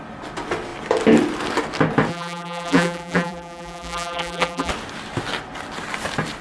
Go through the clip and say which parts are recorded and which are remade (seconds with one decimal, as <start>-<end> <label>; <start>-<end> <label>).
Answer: 0.0-2.1 recorded; 2.1-4.7 remade; 4.7-6.4 recorded

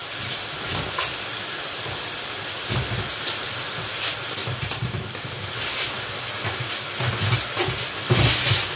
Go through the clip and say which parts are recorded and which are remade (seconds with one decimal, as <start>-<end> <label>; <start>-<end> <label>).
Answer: 0.0-0.7 remade; 0.7-3.1 recorded; 3.1-3.7 remade; 3.7-8.8 recorded

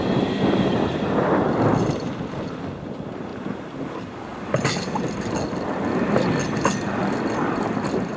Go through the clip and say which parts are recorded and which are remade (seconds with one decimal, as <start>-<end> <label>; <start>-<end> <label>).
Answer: 0.0-8.2 recorded

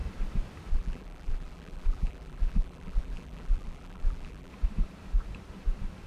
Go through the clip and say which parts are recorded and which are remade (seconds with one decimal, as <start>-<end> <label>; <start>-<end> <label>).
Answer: 0.0-0.7 recorded; 0.7-4.5 remade; 4.5-6.1 recorded